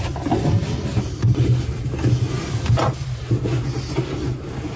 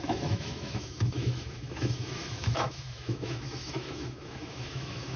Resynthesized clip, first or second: second